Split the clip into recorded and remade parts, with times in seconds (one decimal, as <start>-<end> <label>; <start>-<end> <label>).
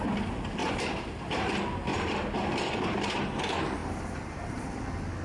0.0-0.6 recorded; 0.6-1.5 remade; 1.5-1.9 recorded; 1.9-3.2 remade; 3.2-3.8 recorded; 3.8-4.8 remade; 4.8-5.2 recorded